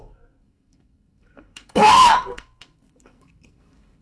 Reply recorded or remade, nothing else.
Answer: remade